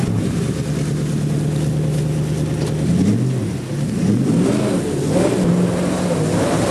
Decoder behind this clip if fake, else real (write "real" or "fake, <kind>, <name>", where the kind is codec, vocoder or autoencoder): real